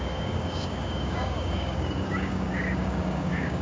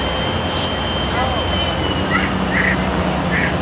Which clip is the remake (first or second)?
first